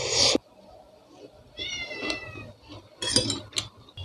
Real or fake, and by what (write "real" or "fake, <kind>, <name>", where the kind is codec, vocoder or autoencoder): real